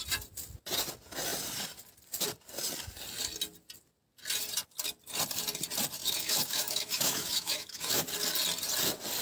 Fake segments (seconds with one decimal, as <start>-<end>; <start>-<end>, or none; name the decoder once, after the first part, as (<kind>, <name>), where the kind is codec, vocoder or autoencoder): 6.0-8.0 (autoencoder, DAC-VAE)